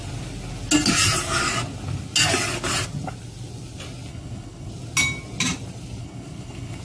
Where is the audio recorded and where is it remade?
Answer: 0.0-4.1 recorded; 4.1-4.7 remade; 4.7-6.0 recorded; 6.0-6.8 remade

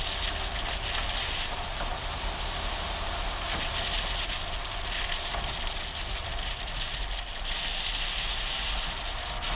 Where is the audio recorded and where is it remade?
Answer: 0.0-9.5 recorded